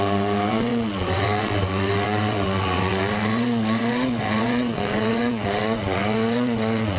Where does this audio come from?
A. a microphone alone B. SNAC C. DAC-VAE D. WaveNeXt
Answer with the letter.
D